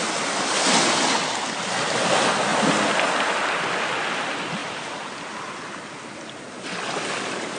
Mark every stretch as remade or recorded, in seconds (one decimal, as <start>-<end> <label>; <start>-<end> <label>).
0.0-4.6 recorded; 4.6-5.1 remade; 5.1-7.6 recorded